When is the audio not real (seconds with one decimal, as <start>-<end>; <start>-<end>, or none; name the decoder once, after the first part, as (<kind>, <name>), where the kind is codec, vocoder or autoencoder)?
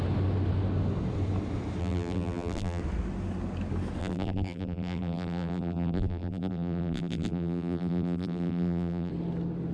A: 1.8-2.8 (vocoder, BigVGAN v2); 4.0-9.1